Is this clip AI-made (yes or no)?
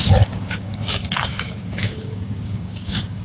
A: yes